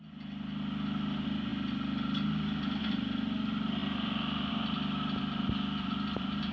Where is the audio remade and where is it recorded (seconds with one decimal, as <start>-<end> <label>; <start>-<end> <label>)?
0.0-6.5 recorded